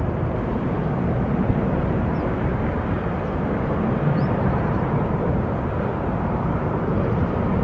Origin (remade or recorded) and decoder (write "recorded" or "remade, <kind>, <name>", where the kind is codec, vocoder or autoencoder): remade, vocoder, BigVGAN v2